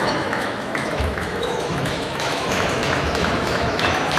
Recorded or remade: remade